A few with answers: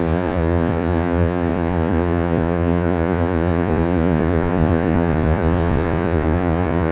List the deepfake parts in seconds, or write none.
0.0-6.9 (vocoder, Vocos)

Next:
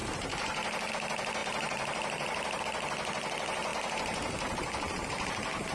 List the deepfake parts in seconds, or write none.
0.0-0.9 (vocoder, BigVGAN v2); 1.4-2.6; 3.7-5.1